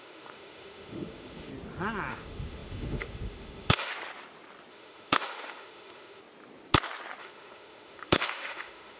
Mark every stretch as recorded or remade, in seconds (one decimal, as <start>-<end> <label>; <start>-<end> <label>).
0.0-1.5 remade; 1.5-2.1 recorded; 2.1-3.9 remade; 3.9-4.7 recorded; 4.7-6.2 remade; 6.2-7.2 recorded; 7.2-9.0 remade